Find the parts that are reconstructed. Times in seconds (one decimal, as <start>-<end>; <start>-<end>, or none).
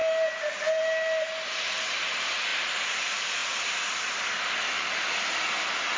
none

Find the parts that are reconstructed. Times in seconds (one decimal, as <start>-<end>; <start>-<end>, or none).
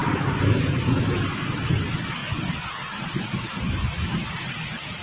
none